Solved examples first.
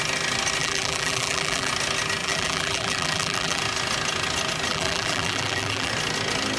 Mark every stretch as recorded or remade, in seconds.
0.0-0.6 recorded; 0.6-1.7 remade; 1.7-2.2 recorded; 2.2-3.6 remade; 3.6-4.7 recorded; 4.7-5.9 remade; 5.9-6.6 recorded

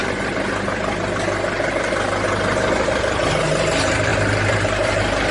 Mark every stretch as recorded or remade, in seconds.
0.0-4.1 recorded; 4.1-5.3 remade

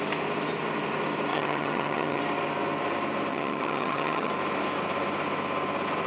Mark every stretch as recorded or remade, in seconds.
0.0-1.3 recorded; 1.3-2.2 remade; 2.2-3.3 recorded; 3.3-4.3 remade; 4.3-6.1 recorded

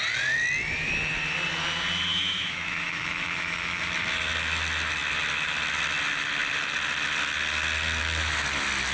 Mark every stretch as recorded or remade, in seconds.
0.0-2.1 recorded; 2.1-3.9 remade; 3.9-8.9 recorded

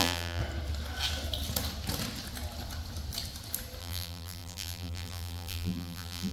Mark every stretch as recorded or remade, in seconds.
0.0-0.4 remade; 0.4-3.8 recorded; 3.8-6.3 remade

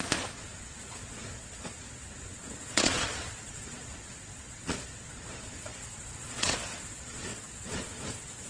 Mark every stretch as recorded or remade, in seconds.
0.0-8.5 remade